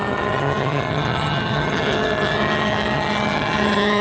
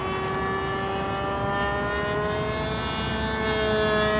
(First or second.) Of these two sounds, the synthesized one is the first